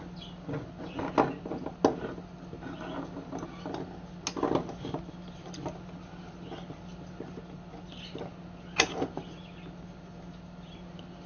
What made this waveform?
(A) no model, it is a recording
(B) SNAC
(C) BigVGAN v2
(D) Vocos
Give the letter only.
A